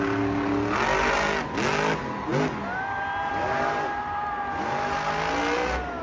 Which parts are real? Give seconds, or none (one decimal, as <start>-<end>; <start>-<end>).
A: 0.0-6.0